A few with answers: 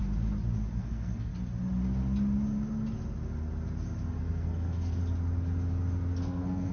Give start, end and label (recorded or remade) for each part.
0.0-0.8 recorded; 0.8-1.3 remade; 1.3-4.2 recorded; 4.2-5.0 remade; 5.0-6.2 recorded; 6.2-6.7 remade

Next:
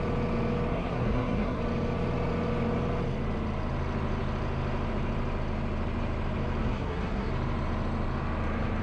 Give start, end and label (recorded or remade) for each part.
0.0-0.7 recorded; 0.7-1.6 remade; 1.6-6.6 recorded; 6.6-7.3 remade; 7.3-8.8 recorded

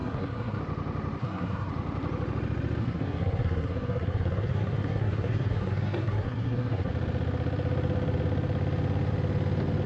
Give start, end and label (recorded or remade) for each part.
0.0-0.6 remade; 0.6-1.2 recorded; 1.2-1.7 remade; 1.7-2.8 recorded; 2.8-6.9 remade; 6.9-9.9 recorded

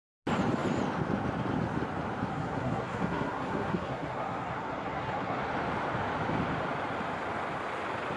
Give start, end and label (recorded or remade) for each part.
0.0-2.3 recorded; 2.3-5.4 remade; 5.4-8.2 recorded